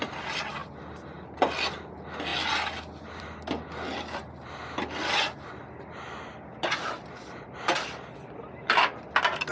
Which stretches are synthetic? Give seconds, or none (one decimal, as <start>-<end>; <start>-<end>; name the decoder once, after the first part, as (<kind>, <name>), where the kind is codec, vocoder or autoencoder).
none